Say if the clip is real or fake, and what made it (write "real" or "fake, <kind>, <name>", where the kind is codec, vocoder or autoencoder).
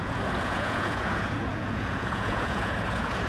fake, vocoder, Vocos